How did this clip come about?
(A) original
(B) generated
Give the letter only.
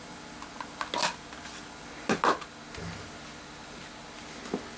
A